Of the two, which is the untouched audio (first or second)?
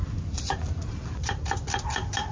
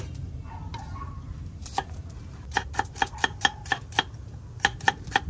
second